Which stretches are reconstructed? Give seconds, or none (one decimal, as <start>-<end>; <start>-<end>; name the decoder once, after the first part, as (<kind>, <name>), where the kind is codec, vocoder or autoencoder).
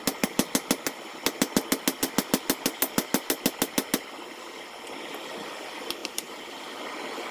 6.0-6.8 (vocoder, BigVGAN v2)